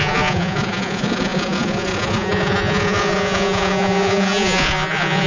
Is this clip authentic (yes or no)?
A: no